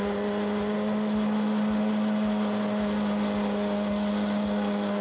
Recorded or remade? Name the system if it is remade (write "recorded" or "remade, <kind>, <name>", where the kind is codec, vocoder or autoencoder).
recorded